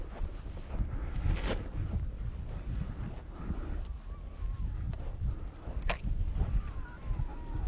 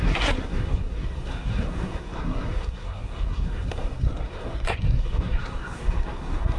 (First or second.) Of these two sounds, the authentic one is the first